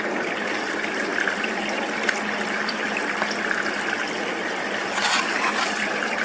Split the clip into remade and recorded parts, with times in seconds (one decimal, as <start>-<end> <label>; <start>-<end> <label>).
0.0-6.2 recorded